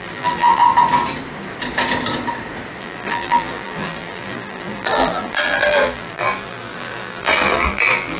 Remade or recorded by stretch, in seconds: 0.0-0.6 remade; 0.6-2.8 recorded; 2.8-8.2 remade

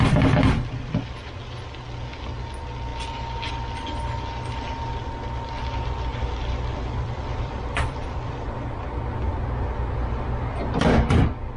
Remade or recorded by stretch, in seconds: 0.0-6.1 recorded; 6.1-8.8 remade; 8.8-11.6 recorded

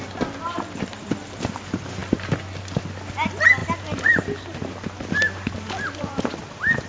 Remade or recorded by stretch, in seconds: 0.0-2.0 recorded; 2.0-2.6 remade; 2.6-6.9 recorded

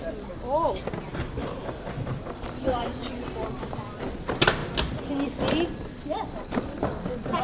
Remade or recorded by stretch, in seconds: 0.0-1.1 recorded; 1.1-3.3 remade; 3.3-7.4 recorded

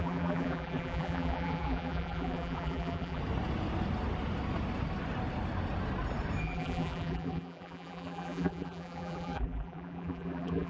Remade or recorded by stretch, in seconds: 0.0-3.2 remade; 3.2-6.4 recorded; 6.4-10.7 remade

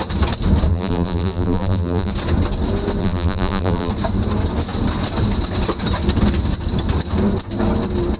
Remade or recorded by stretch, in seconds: 0.0-0.7 recorded; 0.7-2.1 remade; 2.1-3.0 recorded; 3.0-3.9 remade; 3.9-8.2 recorded